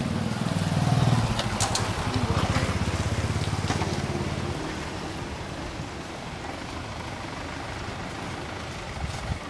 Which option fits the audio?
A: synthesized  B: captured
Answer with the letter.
B